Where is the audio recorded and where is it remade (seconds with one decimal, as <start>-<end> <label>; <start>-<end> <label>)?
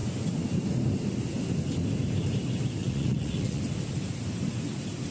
0.0-2.8 recorded; 2.8-3.6 remade; 3.6-5.1 recorded